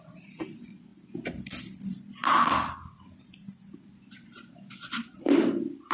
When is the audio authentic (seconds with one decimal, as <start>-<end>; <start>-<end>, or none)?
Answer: 0.9-1.6; 2.2-5.9